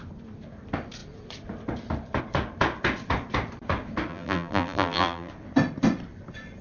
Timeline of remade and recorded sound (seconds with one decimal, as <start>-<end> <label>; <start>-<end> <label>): 0.0-4.1 recorded; 4.1-5.3 remade; 5.3-6.6 recorded

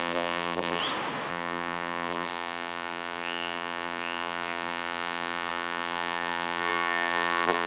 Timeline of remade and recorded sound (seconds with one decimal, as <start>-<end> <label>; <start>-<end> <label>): 0.0-0.8 remade; 0.8-1.3 recorded; 1.3-7.7 remade